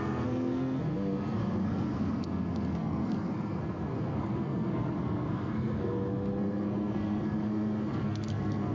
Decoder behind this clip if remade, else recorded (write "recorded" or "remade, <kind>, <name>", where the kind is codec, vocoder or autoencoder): remade, codec, SNAC